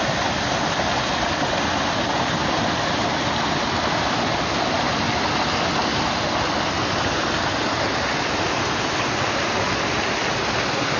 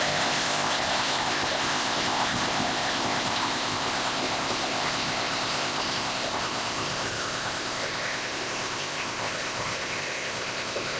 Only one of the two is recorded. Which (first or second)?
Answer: first